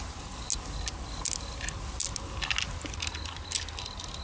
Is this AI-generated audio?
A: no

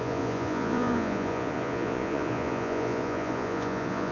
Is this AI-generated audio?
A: yes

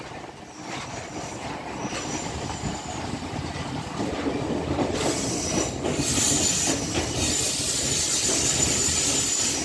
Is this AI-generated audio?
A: no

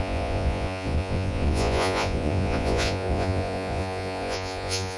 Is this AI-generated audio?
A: yes